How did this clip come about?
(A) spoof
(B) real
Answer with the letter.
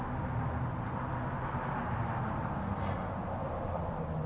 B